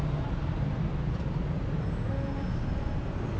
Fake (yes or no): no